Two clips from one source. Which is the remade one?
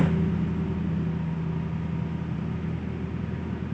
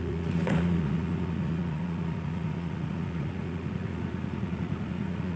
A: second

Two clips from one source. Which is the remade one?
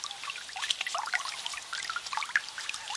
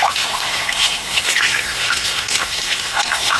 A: second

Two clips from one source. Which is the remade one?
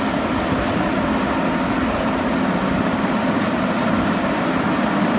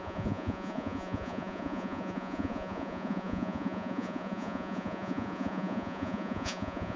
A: second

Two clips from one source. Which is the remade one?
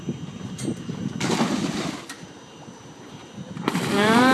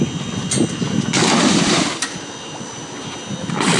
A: first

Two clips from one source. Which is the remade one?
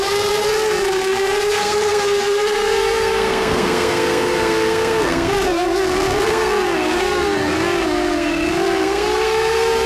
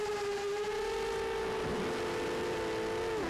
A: first